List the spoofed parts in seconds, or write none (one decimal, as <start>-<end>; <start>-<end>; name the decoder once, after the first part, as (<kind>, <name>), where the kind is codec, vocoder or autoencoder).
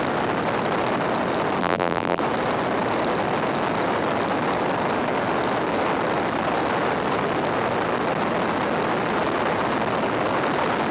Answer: 1.6-2.2 (vocoder, BigVGAN v2)